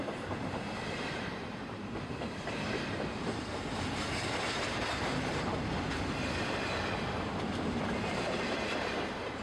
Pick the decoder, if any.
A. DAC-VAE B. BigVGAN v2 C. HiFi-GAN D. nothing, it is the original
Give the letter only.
B